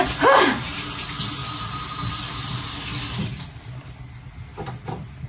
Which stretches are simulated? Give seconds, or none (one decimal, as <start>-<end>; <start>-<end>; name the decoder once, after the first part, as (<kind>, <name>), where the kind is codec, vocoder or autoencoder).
1.4-4.0 (vocoder, BigVGAN v2); 4.5-5.3